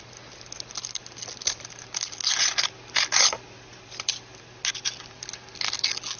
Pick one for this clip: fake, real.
real